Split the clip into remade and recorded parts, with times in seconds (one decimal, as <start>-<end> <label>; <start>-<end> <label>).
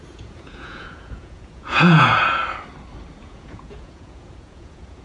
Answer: 0.0-2.4 remade; 2.4-3.2 recorded; 3.2-5.0 remade